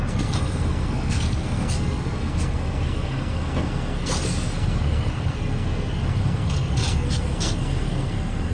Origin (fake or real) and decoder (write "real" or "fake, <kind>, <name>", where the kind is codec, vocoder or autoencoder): fake, codec, SNAC